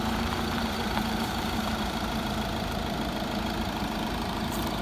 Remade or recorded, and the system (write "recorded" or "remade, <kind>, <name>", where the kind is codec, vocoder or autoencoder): remade, vocoder, BigVGAN v2